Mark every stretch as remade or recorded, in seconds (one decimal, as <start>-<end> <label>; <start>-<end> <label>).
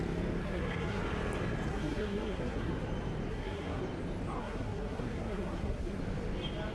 0.0-0.4 recorded; 0.4-1.0 remade; 1.0-1.7 recorded; 1.7-2.7 remade; 2.7-3.3 recorded; 3.3-3.8 remade; 3.8-4.4 recorded; 4.4-6.0 remade; 6.0-6.7 recorded